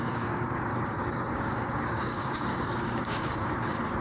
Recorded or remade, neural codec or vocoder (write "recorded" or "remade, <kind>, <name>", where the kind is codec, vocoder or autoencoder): remade, codec, DAC